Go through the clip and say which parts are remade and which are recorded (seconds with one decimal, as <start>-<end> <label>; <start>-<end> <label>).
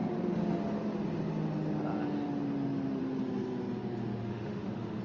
0.0-4.2 recorded; 4.2-5.0 remade